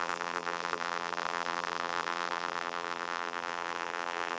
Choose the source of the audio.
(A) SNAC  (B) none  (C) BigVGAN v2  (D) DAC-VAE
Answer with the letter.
C